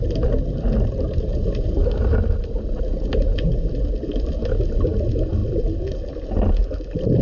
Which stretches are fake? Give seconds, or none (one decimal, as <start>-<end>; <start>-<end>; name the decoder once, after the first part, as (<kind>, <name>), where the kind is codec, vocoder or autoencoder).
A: 1.3-2.4 (vocoder, BigVGAN v2); 5.4-6.1

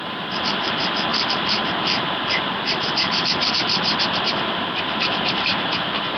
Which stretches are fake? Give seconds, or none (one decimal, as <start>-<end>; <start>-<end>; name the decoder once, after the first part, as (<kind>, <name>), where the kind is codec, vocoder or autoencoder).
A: 0.0-6.2 (vocoder, BigVGAN v2)

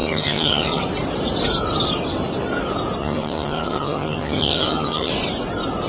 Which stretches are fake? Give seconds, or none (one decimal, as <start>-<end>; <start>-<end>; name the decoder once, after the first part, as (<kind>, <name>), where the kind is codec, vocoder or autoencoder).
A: 0.0-0.8 (vocoder, HiFi-GAN); 3.0-5.1